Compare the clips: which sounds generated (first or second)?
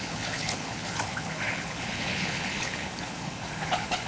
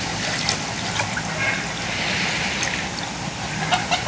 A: first